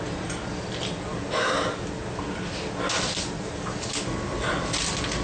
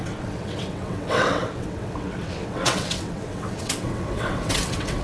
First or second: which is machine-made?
second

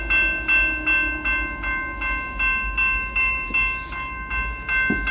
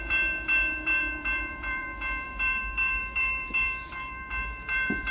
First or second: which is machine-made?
second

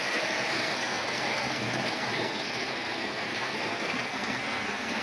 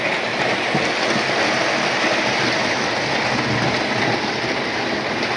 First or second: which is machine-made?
first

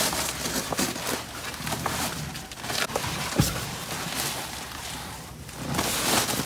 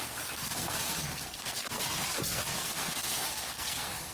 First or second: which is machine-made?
second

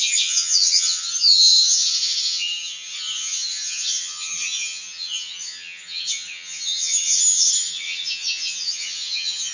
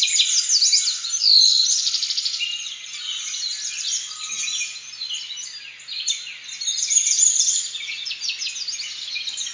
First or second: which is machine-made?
first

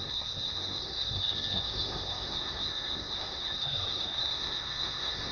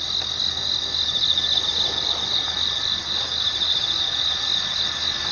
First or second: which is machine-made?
first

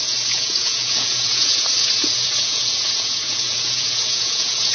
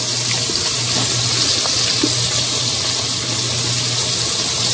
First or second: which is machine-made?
first